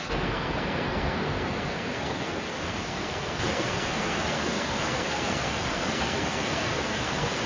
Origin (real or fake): fake